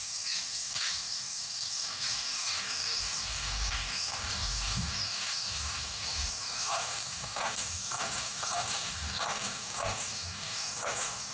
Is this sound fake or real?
fake